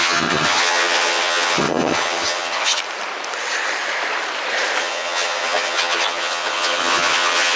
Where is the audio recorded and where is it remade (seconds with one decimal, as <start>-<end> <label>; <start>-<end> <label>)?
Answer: 0.0-2.8 remade; 2.8-4.8 recorded; 4.8-7.6 remade